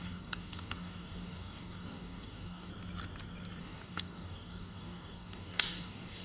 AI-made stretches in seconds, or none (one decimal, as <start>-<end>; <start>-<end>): 0.0-2.7; 3.6-6.2